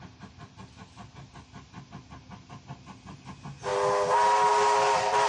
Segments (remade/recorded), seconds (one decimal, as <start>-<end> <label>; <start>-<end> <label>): 0.0-5.3 recorded